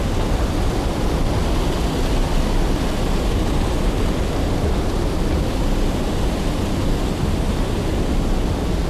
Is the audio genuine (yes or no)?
yes